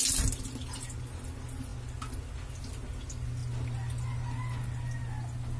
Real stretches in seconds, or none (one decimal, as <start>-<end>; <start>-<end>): 0.0-5.6